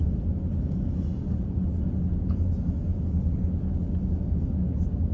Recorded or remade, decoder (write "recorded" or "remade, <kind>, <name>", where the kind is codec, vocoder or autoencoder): recorded